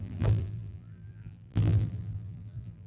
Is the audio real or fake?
fake